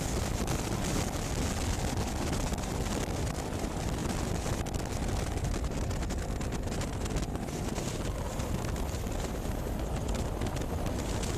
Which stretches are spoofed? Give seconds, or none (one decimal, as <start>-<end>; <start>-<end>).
none